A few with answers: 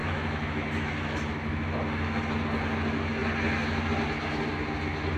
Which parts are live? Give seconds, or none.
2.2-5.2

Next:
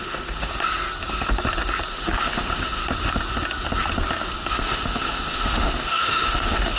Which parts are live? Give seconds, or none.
0.5-1.9; 2.8-4.5